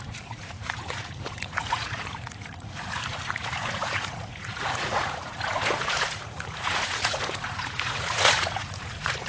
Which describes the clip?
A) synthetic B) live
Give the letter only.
A